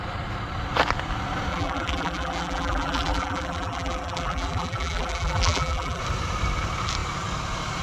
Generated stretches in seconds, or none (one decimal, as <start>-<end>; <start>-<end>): 1.5-6.0

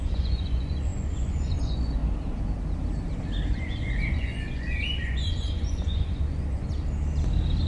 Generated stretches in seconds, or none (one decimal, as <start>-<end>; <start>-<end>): 0.0-2.0; 3.5-6.7

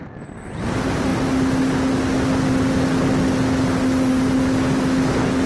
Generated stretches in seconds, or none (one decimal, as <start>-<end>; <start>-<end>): none